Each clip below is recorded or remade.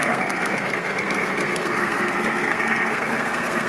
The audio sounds remade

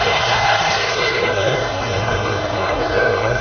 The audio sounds remade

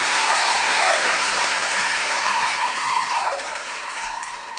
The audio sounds remade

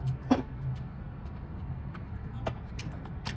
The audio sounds remade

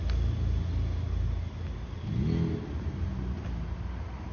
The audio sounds recorded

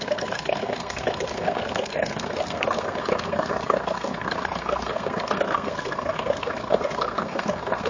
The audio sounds remade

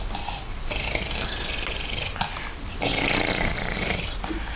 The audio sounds recorded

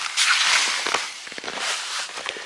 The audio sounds recorded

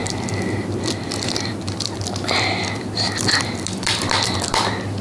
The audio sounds recorded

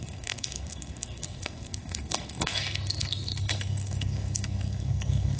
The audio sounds remade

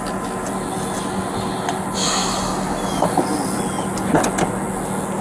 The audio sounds recorded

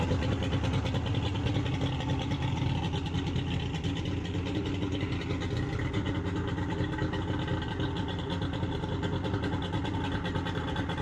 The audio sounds recorded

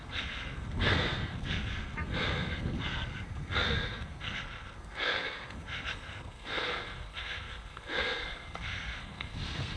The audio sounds remade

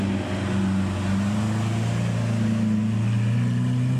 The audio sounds recorded